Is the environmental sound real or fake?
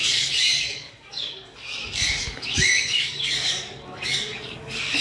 fake